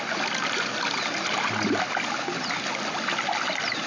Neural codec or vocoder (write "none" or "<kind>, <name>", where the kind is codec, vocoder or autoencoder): none